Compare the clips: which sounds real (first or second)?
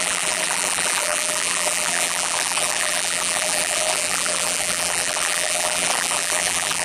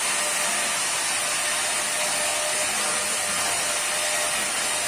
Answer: second